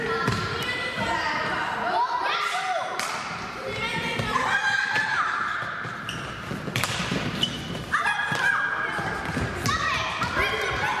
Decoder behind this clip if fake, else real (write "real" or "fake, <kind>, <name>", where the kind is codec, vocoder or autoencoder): real